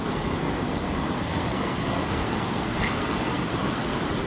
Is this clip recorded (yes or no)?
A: no